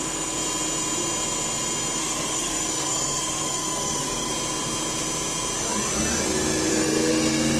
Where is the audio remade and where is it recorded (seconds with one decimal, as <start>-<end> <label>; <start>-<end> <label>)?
0.0-2.0 recorded; 2.0-4.3 remade; 4.3-6.7 recorded; 6.7-7.6 remade